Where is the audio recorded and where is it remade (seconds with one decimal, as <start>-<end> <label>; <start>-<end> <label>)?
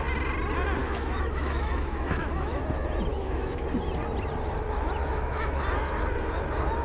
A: 0.0-0.8 recorded; 0.8-2.6 remade; 2.6-3.1 recorded; 3.1-3.6 remade; 3.6-5.0 recorded; 5.0-5.6 remade; 5.6-6.8 recorded